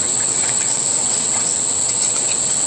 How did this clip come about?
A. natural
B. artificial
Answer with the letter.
B